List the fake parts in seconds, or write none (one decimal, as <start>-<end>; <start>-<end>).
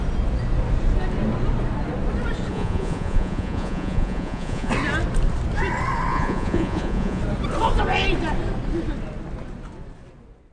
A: 2.5-4.7; 6.1-7.2